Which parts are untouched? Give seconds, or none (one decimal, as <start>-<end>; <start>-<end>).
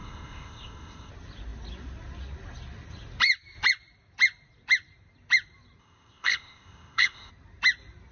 1.1-5.8; 7.3-8.1